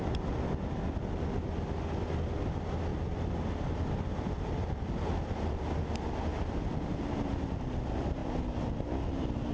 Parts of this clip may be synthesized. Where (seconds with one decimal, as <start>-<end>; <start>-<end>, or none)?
none